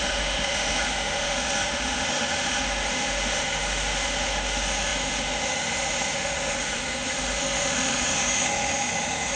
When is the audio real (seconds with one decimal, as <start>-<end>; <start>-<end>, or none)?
none